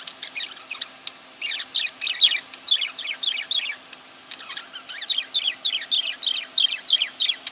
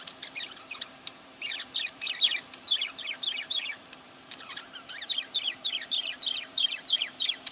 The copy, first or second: second